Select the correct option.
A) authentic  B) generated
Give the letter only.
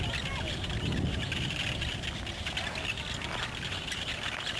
A